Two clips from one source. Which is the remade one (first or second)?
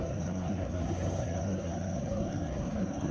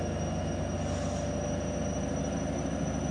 first